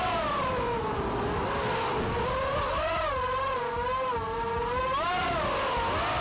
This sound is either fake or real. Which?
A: real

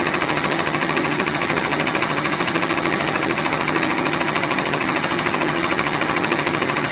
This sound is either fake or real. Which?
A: fake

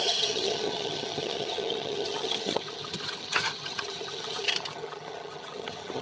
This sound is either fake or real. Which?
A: fake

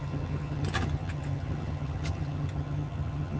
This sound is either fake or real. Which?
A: fake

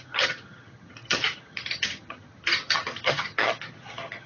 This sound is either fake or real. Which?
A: fake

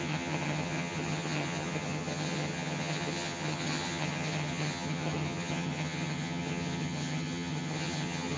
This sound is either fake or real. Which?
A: fake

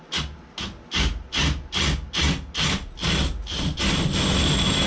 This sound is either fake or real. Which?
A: real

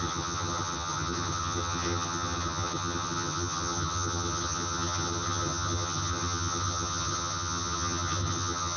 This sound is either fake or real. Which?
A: fake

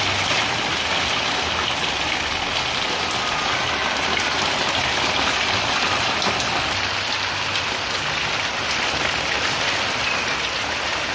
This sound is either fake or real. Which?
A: real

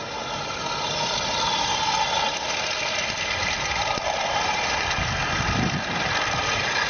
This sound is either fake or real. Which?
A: real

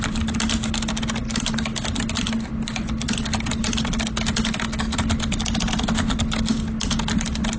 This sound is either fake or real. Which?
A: real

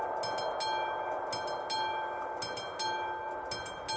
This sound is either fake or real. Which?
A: real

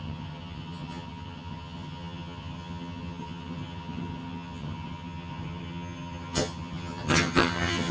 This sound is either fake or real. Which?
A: fake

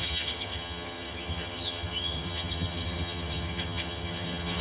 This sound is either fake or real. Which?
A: fake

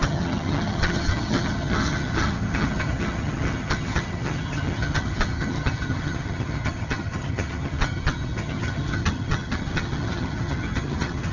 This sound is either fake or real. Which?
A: fake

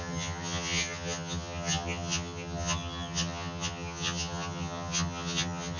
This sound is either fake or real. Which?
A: fake